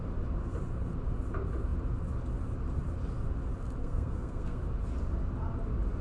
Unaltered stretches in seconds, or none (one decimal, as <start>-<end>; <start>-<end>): 0.0-3.8; 4.6-6.0